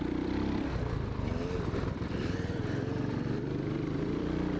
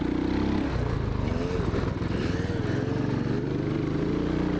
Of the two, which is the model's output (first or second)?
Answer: first